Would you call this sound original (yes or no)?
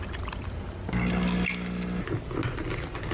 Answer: yes